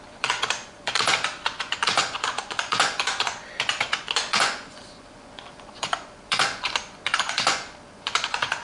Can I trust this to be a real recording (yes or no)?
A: no